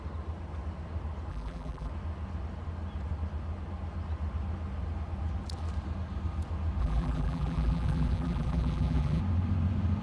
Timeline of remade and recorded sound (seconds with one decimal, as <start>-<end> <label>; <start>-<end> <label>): 0.0-1.3 recorded; 1.3-1.9 remade; 1.9-6.8 recorded; 6.8-9.2 remade; 9.2-10.0 recorded